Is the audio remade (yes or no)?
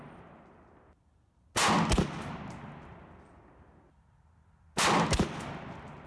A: no